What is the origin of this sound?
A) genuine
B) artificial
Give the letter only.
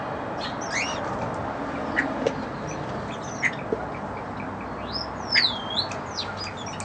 A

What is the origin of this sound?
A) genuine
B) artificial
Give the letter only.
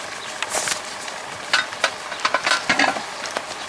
A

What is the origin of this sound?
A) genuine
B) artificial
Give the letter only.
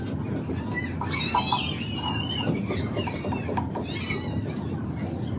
A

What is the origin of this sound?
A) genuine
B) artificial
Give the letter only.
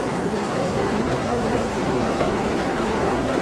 B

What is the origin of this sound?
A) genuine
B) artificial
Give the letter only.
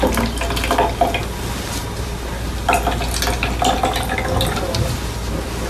A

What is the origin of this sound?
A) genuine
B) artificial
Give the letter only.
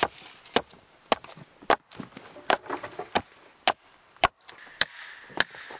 A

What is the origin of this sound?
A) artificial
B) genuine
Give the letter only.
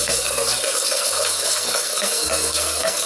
A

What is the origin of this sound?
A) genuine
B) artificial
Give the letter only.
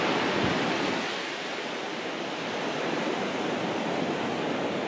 A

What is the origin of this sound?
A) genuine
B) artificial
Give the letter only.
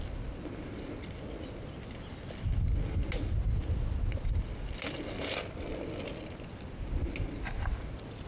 A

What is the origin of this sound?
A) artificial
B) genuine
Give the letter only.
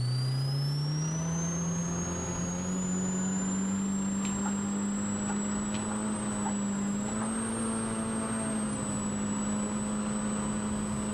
B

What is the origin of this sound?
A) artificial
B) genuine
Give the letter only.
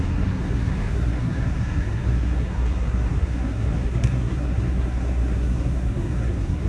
A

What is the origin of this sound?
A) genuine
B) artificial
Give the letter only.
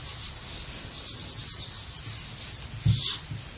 A